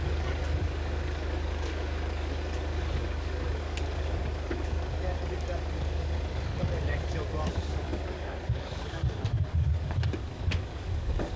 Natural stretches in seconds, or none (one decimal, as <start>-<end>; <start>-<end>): none